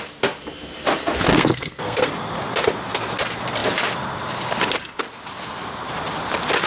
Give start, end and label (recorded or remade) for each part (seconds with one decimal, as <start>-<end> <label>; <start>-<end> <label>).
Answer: 0.0-1.3 recorded; 1.3-2.1 remade; 2.1-6.7 recorded